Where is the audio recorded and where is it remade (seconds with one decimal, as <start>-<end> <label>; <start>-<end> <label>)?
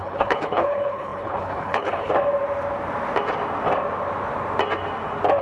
0.0-2.1 remade; 2.1-5.4 recorded